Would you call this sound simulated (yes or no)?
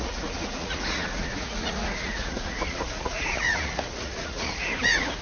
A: yes